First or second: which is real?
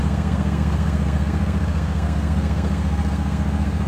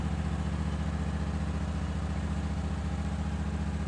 second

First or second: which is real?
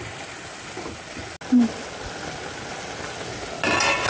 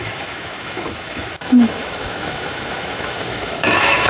first